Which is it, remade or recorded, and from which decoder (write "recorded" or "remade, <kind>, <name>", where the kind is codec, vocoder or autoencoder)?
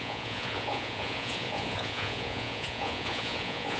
remade, vocoder, Vocos